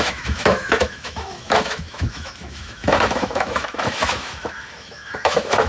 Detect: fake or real fake